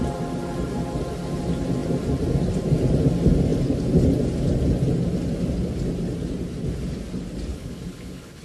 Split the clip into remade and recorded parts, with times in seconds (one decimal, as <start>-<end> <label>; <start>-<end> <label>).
0.0-7.5 recorded; 7.5-8.4 remade